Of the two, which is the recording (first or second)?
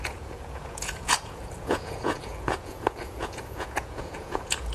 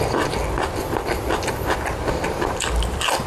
second